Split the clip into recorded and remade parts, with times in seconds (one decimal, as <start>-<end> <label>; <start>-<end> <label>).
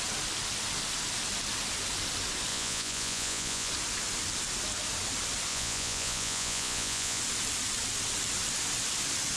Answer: 0.0-2.5 recorded; 2.5-3.7 remade; 3.7-5.5 recorded; 5.5-7.2 remade; 7.2-9.4 recorded